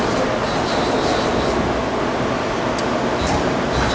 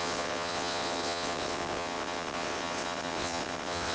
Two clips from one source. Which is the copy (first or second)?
second